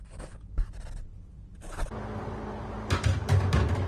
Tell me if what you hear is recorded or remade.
recorded